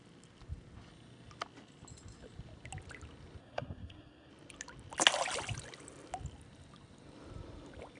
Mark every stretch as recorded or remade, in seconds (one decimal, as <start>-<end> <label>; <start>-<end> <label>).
0.0-3.4 recorded; 3.4-4.3 remade; 4.3-8.0 recorded